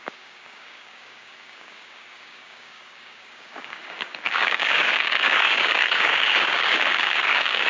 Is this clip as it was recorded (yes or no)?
no